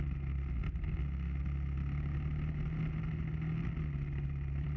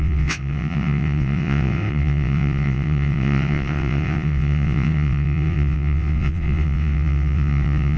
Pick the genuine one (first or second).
first